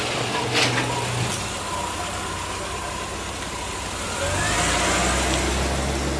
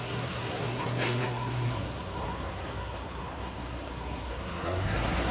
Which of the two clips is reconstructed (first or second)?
second